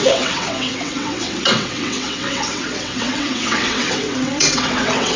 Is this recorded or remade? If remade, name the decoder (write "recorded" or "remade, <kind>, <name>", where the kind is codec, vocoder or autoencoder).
remade, vocoder, WaveNeXt